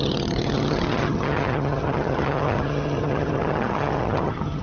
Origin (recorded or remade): remade